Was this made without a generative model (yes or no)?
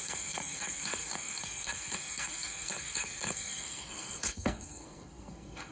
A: no